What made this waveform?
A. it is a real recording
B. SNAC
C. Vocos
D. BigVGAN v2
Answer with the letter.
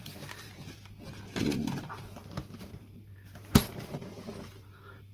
D